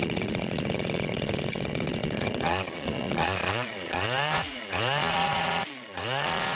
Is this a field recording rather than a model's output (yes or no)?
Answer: no